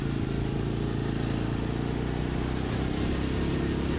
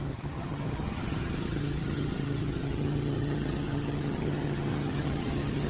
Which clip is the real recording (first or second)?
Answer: first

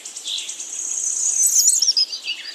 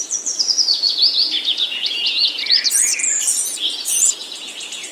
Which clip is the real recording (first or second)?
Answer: first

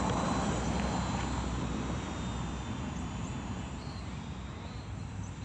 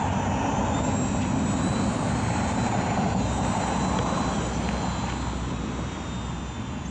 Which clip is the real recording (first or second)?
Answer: second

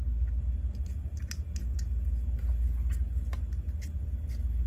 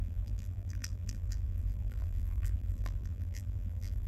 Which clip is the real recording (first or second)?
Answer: first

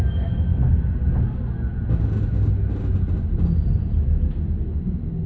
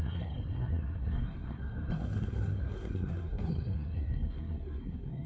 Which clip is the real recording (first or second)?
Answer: first